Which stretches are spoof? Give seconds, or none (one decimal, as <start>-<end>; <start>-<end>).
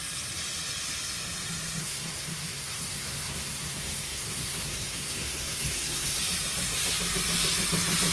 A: 1.8-6.2